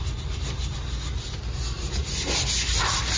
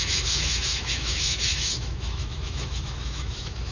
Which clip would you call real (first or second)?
first